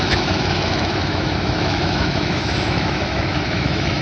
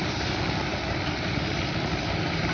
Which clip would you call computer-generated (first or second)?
first